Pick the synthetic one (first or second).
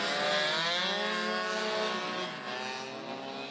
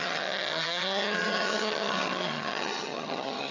second